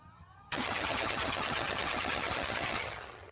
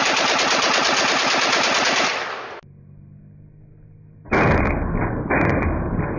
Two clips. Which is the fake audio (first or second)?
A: first